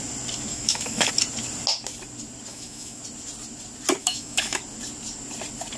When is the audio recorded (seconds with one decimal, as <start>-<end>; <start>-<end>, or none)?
0.0-0.5; 1.1-2.5; 3.0-4.0; 4.6-5.8